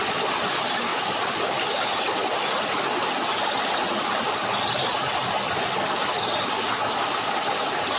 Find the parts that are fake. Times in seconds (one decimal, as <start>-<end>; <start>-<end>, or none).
none